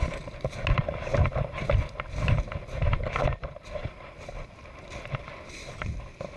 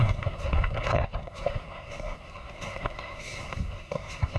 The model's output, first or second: second